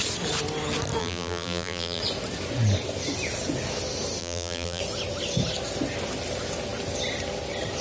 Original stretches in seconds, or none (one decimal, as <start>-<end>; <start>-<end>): 0.0-1.0; 2.0-4.2; 4.8-7.8